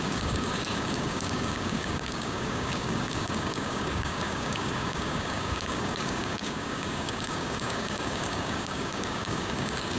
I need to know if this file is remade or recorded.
remade